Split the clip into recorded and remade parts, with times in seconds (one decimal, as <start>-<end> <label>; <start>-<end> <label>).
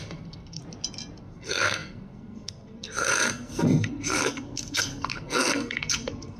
0.0-0.6 remade; 0.6-1.2 recorded; 1.2-6.4 remade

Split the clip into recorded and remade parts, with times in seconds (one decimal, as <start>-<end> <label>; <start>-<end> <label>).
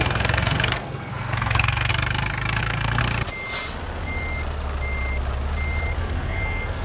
0.0-1.9 remade; 1.9-2.6 recorded; 2.6-3.0 remade; 3.0-6.0 recorded; 6.0-6.8 remade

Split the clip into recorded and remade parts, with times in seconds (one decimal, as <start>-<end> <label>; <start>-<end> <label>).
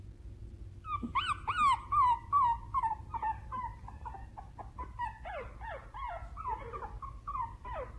0.0-8.0 recorded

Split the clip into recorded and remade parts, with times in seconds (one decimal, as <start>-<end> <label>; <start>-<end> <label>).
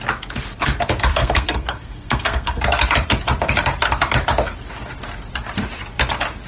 0.0-1.1 recorded; 1.1-2.6 remade; 2.6-6.5 recorded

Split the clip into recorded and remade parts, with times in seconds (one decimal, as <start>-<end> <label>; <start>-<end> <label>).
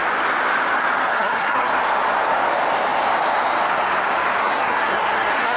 0.0-1.1 recorded; 1.1-1.7 remade; 1.7-4.4 recorded; 4.4-5.6 remade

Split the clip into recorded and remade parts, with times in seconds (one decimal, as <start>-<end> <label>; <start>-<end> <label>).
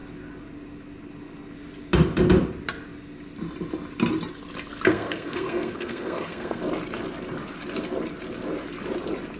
0.0-4.9 recorded; 4.9-6.6 remade; 6.6-9.4 recorded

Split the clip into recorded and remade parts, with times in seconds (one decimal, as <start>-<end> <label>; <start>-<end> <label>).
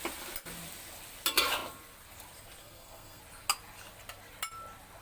0.0-2.6 recorded; 2.6-3.2 remade; 3.2-5.0 recorded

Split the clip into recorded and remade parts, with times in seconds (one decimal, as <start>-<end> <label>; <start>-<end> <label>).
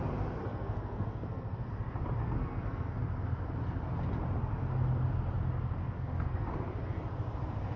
0.0-0.4 recorded; 0.4-1.7 remade; 1.7-2.2 recorded; 2.2-3.0 remade; 3.0-5.8 recorded; 5.8-6.5 remade; 6.5-7.8 recorded